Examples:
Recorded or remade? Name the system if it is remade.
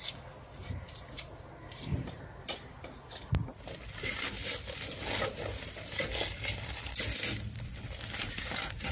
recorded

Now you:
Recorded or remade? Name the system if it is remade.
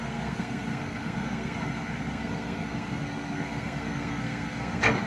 remade, codec, SNAC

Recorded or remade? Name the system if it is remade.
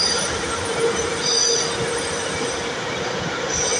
recorded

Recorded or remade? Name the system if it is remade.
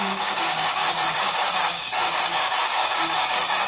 remade, codec, DAC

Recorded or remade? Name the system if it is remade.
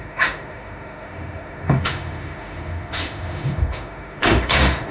remade, autoencoder, DAC-VAE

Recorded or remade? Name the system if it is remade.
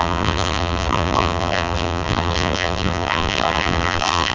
remade, vocoder, BigVGAN v2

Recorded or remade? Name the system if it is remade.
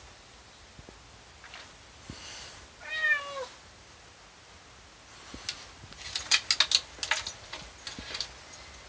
recorded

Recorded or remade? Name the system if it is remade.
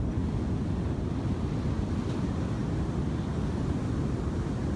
recorded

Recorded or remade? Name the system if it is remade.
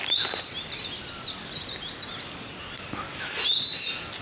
recorded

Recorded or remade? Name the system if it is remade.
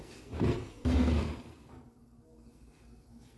remade, codec, SNAC